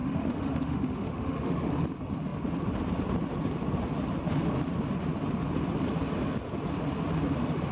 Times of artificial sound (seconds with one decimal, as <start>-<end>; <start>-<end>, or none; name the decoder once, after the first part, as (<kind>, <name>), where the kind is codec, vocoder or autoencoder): 0.0-1.7 (autoencoder, DAC-VAE)